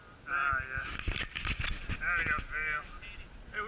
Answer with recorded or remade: recorded